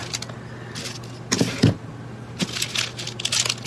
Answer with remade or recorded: recorded